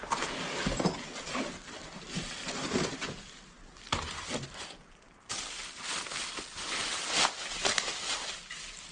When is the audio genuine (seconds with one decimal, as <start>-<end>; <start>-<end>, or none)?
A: 0.0-8.9